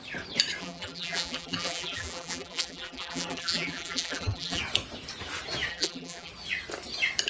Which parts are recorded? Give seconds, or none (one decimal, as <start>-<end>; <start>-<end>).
0.0-0.6; 4.6-5.7; 6.3-7.3